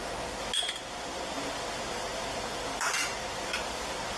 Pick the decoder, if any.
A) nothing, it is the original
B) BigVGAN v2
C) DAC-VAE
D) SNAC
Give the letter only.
A